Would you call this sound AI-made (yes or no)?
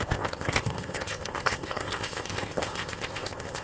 yes